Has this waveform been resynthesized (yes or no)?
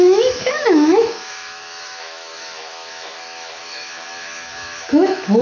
yes